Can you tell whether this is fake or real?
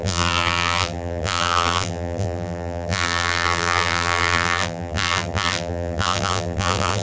fake